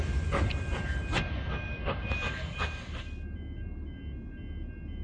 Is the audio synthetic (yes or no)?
no